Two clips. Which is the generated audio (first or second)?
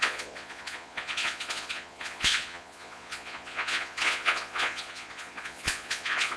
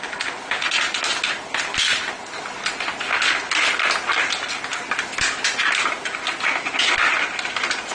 first